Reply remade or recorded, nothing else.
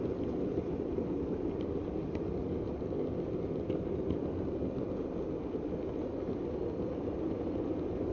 recorded